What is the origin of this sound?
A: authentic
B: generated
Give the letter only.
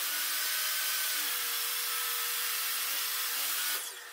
B